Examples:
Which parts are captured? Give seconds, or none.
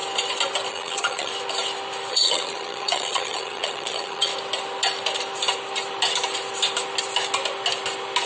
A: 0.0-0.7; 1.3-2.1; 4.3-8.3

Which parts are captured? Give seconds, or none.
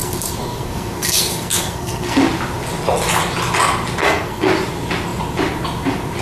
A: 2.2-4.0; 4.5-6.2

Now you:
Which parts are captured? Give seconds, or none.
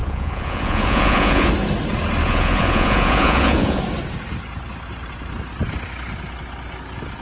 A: 1.5-2.2; 3.8-7.2